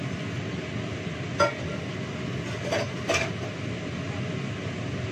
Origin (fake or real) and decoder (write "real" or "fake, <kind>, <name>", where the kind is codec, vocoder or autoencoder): real